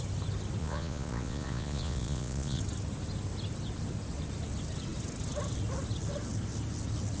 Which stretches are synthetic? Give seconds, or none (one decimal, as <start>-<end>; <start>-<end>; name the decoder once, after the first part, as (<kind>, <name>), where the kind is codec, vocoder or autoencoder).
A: 0.6-2.6 (vocoder, Vocos)